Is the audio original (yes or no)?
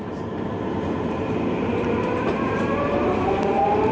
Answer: no